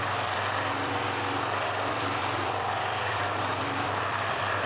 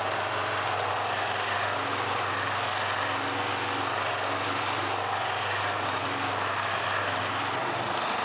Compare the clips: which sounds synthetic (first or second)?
first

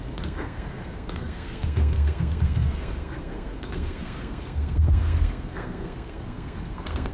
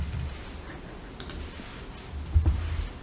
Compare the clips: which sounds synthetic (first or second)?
first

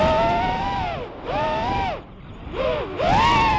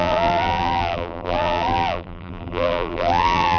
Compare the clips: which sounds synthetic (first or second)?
second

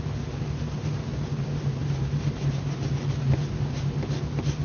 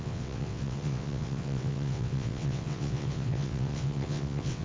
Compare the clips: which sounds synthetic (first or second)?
second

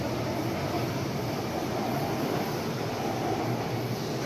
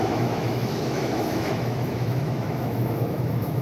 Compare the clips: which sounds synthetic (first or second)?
second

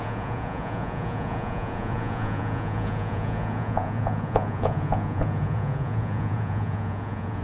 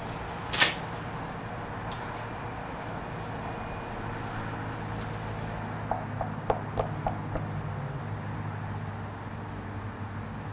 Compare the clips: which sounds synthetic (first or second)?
first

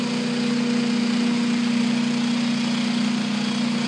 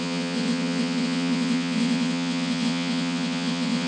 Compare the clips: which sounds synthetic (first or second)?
second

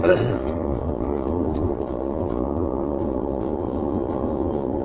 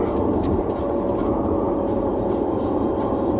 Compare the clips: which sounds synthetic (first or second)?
first